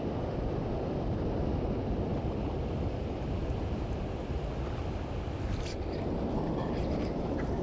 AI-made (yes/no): no